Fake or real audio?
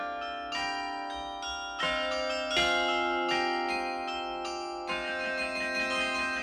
real